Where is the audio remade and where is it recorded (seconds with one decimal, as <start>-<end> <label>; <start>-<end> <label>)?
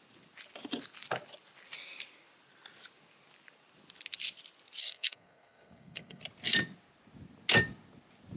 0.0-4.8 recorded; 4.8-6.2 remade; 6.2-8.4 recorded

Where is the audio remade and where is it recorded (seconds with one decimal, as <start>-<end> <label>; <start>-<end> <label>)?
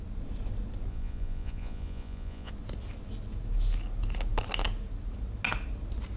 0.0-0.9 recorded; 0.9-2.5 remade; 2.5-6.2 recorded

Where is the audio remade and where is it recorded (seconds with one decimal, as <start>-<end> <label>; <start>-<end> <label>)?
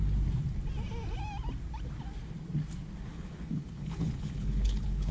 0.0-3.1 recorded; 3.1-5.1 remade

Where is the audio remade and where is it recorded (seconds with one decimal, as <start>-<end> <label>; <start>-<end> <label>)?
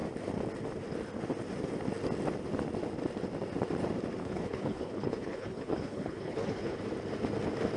0.0-4.2 recorded; 4.2-6.8 remade; 6.8-7.8 recorded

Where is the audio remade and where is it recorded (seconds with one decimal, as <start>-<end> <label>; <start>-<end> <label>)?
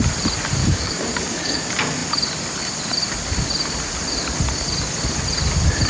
0.0-0.6 recorded; 0.6-1.6 remade; 1.6-5.9 recorded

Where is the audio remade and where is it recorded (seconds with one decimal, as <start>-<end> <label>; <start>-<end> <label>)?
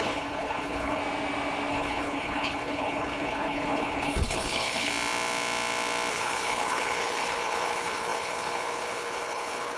0.0-1.0 remade; 1.0-1.7 recorded; 1.7-4.9 remade; 4.9-6.1 recorded; 6.1-9.8 remade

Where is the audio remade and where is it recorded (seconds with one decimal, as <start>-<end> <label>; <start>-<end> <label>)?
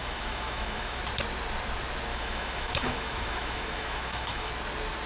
0.0-1.0 remade; 1.0-2.1 recorded; 2.1-4.5 remade; 4.5-5.1 recorded